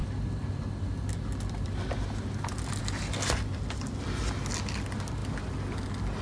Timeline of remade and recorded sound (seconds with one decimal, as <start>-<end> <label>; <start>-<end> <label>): 0.0-6.2 recorded